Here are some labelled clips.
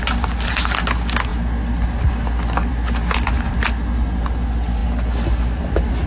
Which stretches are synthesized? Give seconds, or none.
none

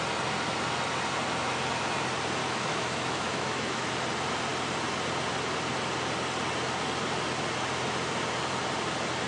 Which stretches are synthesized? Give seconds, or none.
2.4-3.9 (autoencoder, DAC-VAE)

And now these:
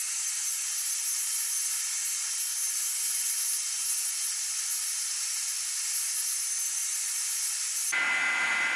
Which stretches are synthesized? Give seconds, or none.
none